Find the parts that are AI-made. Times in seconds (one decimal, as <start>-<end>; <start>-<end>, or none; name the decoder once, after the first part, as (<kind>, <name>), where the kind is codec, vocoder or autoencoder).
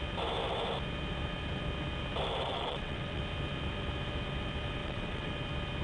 2.5-3.2 (vocoder, WaveNeXt); 4.8-5.3